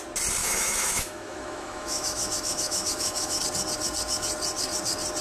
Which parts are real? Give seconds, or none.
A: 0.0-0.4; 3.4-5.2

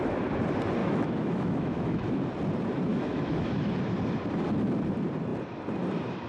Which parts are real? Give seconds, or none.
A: 0.0-0.8; 2.2-2.9; 3.7-6.3

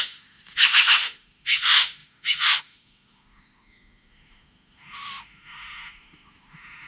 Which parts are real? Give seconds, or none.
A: none

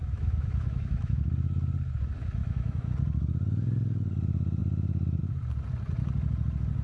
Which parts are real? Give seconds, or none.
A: 1.3-2.4; 2.9-6.8

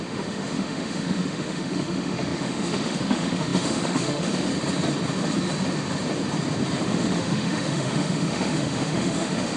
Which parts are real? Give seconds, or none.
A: 4.5-6.8

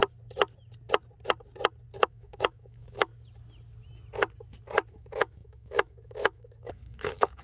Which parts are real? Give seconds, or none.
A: 0.0-2.0; 3.1-4.9

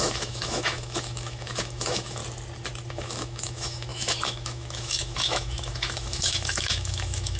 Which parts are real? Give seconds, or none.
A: 2.2-2.9

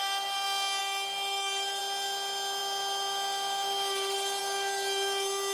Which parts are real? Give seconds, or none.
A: 0.0-0.8; 1.8-5.5